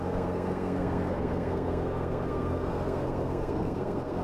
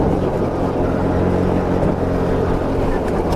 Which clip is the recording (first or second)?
second